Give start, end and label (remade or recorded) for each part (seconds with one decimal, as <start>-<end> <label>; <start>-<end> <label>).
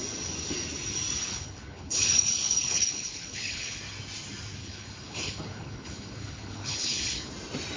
0.0-1.2 recorded; 1.2-3.8 remade; 3.8-4.6 recorded; 4.6-7.3 remade; 7.3-7.8 recorded